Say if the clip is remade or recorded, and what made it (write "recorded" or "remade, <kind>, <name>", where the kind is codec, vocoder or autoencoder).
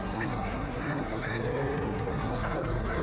remade, codec, SNAC